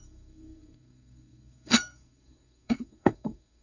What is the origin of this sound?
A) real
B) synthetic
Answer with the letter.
B